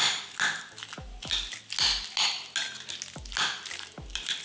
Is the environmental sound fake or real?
real